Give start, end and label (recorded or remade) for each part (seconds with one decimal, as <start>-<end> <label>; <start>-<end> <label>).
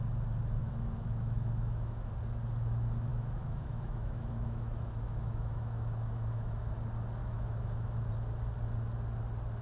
0.0-0.6 recorded; 0.6-2.1 remade; 2.1-3.1 recorded; 3.1-6.7 remade; 6.7-7.2 recorded; 7.2-8.1 remade; 8.1-9.6 recorded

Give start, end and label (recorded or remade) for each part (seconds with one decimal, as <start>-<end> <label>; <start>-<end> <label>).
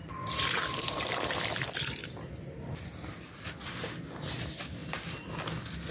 0.0-3.4 remade; 3.4-4.8 recorded; 4.8-5.4 remade; 5.4-5.9 recorded